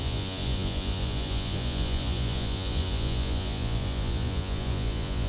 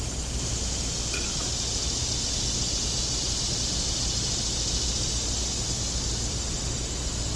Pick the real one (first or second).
second